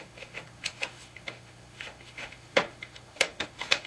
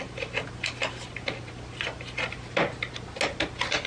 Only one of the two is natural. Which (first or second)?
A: second